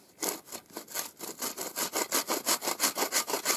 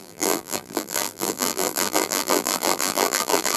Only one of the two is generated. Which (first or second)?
second